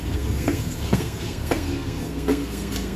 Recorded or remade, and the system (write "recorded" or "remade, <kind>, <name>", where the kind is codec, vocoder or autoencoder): remade, codec, SNAC